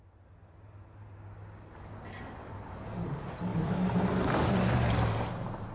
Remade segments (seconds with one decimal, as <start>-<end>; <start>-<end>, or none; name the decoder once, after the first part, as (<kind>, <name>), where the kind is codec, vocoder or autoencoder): 3.5-5.3 (vocoder, BigVGAN v2)